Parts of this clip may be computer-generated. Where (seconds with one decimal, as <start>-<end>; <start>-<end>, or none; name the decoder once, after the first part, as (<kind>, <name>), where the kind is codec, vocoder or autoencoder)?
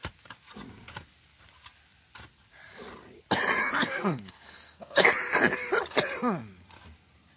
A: 3.6-5.1 (codec, SNAC)